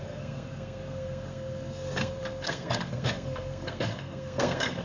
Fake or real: fake